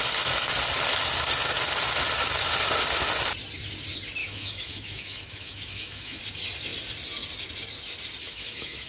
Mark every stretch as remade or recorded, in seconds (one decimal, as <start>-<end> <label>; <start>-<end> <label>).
0.0-4.2 recorded; 4.2-6.2 remade; 6.2-8.2 recorded; 8.2-8.9 remade